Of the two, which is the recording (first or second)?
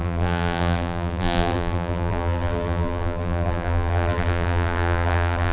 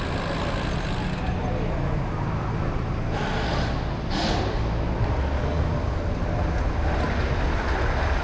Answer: second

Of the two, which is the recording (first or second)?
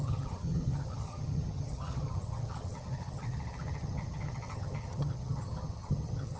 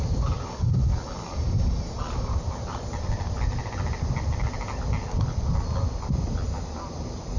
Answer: second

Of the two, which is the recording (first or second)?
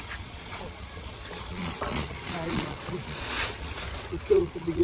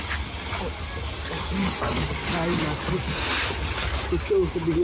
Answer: second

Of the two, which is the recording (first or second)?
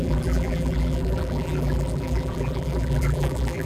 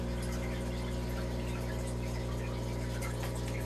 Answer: second